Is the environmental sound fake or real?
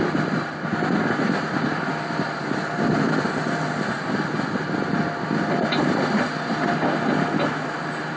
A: real